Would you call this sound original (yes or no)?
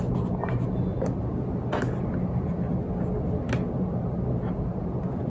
yes